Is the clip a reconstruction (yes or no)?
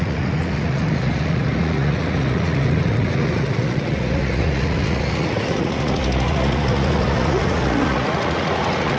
yes